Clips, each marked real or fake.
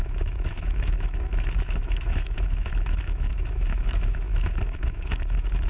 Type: fake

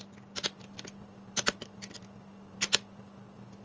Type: real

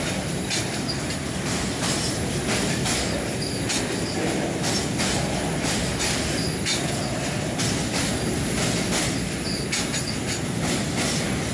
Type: real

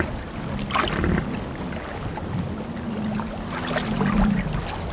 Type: real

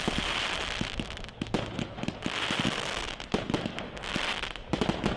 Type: real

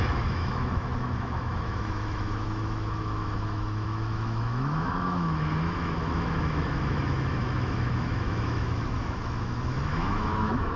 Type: fake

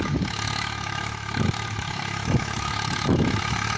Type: fake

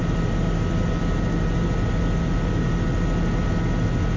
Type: real